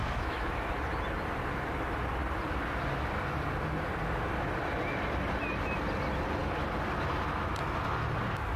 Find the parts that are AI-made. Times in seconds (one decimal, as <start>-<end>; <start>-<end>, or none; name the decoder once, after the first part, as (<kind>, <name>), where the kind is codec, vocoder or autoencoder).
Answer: 0.0-0.7 (autoencoder, DAC-VAE)